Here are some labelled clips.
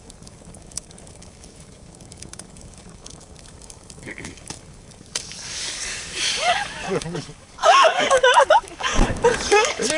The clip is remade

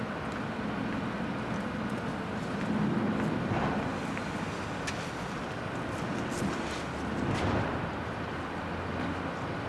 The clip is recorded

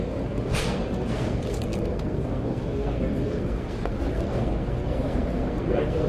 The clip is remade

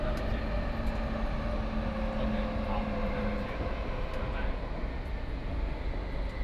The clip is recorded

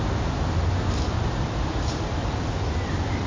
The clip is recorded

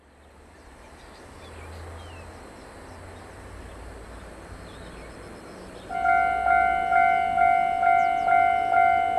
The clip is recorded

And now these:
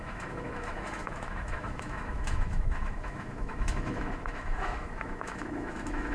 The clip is remade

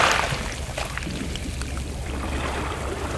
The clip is remade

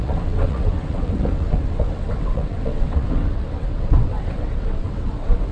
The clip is remade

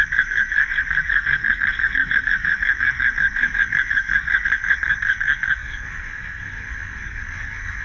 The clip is remade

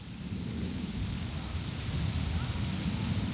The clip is recorded